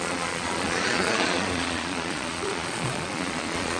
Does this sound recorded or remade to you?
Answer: remade